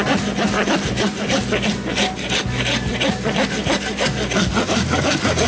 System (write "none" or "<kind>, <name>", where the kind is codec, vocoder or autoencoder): none